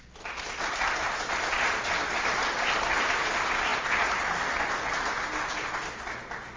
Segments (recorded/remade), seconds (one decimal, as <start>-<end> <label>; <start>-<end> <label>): 0.0-6.6 recorded